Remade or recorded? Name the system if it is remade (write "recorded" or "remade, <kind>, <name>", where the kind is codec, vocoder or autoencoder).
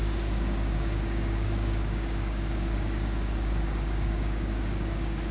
remade, codec, DAC